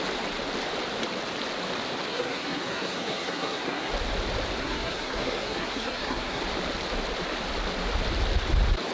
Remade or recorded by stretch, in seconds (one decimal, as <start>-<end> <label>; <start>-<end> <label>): 0.0-2.1 recorded; 2.1-3.9 remade; 3.9-4.6 recorded; 4.6-6.4 remade; 6.4-8.9 recorded

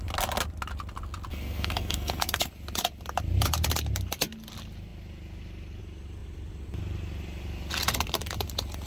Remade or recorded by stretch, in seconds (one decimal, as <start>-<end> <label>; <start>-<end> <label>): 0.0-1.3 recorded; 1.3-2.5 remade; 2.5-8.9 recorded